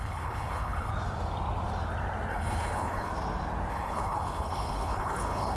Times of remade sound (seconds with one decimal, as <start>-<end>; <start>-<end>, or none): 0.0-0.9; 2.3-3.1; 3.7-5.6